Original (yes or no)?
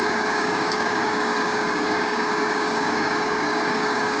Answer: no